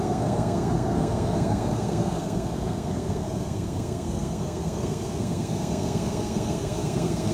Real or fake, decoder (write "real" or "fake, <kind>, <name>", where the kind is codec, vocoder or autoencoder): fake, codec, SNAC